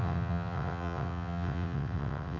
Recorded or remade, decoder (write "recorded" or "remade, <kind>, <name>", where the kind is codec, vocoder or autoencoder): remade, vocoder, WaveNeXt